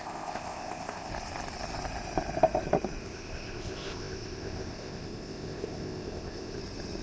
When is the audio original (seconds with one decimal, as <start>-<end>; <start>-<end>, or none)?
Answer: 1.1-3.0; 6.6-7.0